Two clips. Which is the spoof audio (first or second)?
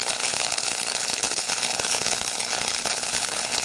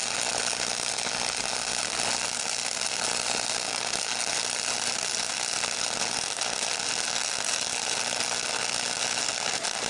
first